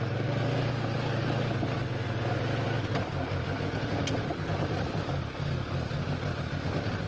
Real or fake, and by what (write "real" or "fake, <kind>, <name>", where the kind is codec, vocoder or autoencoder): real